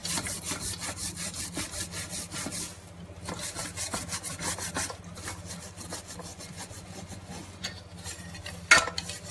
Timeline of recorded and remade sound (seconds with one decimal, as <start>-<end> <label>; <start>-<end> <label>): 0.0-6.3 recorded; 6.3-7.8 remade; 7.8-9.3 recorded